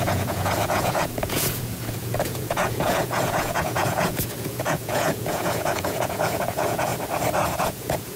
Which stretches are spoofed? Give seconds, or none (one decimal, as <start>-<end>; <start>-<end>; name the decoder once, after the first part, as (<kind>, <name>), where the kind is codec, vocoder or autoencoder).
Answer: 0.0-6.9 (vocoder, Vocos); 7.6-8.2